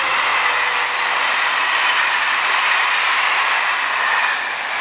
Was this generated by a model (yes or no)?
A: no